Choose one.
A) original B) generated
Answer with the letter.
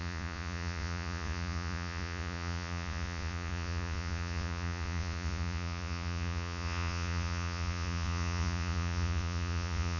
B